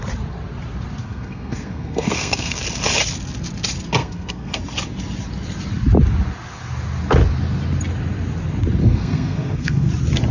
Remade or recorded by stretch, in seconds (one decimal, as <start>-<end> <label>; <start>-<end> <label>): 0.0-1.0 recorded; 1.0-2.6 remade; 2.6-4.0 recorded; 4.0-4.6 remade; 4.6-8.8 recorded; 8.8-9.9 remade; 9.9-10.3 recorded